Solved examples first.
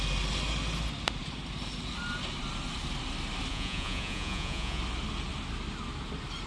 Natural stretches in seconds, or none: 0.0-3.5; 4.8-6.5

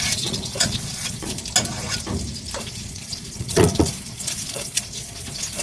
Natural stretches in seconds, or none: 1.4-2.6

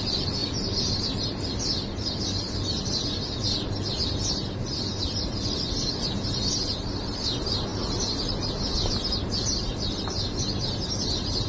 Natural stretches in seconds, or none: 0.0-11.5

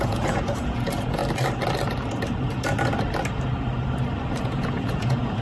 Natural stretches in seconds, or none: 1.2-4.4

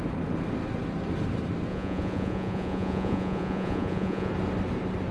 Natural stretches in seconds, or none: 0.0-1.7; 4.3-5.1